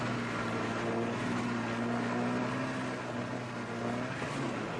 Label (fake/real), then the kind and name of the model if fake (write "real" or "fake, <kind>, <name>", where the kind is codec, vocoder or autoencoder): real